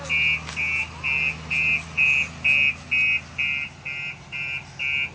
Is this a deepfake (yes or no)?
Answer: no